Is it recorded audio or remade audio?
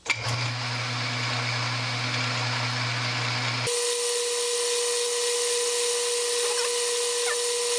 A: recorded